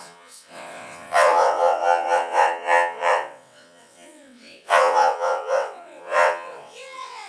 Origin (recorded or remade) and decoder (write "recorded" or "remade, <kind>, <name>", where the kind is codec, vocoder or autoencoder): remade, vocoder, WaveNeXt